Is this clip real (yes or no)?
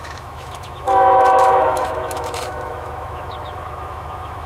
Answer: no